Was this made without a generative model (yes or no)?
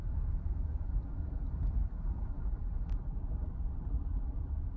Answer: no